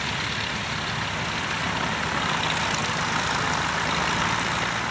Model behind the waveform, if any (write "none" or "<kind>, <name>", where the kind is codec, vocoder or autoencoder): none